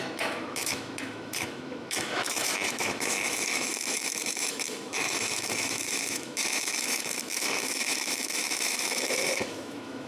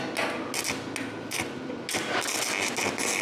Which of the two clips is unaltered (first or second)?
second